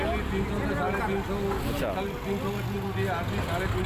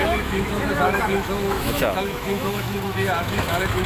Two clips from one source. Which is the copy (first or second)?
second